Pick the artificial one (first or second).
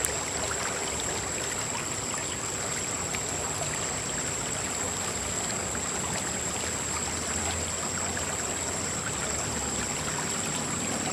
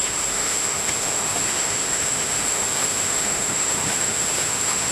second